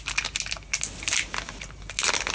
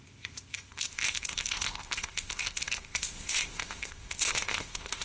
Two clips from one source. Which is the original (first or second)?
first